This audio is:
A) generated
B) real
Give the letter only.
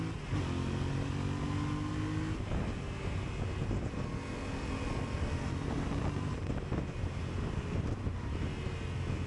B